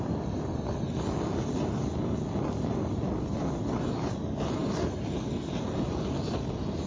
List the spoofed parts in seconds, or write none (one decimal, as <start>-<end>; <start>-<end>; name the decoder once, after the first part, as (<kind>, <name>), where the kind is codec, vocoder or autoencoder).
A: none